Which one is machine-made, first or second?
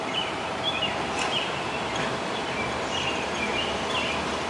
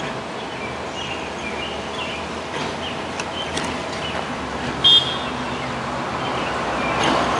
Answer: first